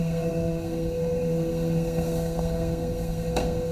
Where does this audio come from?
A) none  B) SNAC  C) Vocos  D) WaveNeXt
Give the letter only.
B